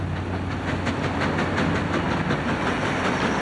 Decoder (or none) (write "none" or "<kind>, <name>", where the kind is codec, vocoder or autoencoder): none